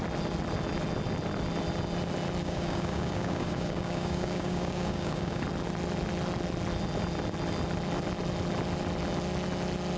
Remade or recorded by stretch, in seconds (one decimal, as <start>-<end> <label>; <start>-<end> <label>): 0.0-2.4 recorded; 2.4-5.4 remade; 5.4-10.0 recorded